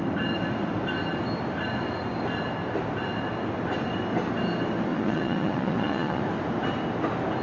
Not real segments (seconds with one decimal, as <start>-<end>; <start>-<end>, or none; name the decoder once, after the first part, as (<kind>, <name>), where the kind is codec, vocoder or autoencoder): 4.9-6.2 (vocoder, Vocos)

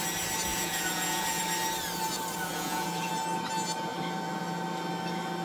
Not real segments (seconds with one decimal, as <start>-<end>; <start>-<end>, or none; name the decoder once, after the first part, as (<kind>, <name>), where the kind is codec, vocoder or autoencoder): 0.5-1.4 (vocoder, Vocos); 2.5-3.1

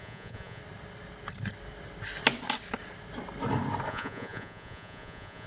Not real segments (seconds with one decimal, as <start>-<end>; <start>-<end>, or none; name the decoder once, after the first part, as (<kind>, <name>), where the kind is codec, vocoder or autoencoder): 0.0-0.6 (vocoder, Vocos); 3.9-5.5

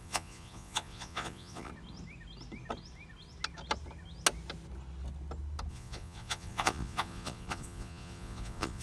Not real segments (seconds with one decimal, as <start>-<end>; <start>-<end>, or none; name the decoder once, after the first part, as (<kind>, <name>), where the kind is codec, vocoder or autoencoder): 0.0-1.7 (vocoder, Vocos); 5.7-8.8

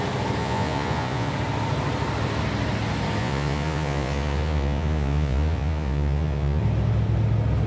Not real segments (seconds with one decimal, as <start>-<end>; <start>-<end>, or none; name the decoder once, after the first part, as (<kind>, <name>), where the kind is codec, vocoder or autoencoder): 0.4-1.3 (vocoder, Vocos); 3.2-6.6

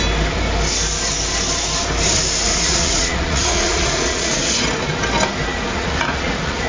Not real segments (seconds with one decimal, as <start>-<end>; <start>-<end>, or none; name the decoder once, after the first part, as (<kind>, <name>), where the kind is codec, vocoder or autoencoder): 2.5-4.5 (vocoder, Vocos); 5.5-6.7

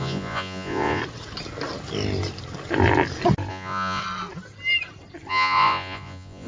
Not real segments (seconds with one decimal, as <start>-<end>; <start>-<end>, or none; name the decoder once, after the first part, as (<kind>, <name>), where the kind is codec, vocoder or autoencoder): 0.0-1.0 (vocoder, Vocos); 3.5-4.0; 5.3-6.5